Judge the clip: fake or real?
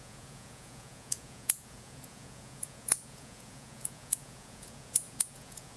fake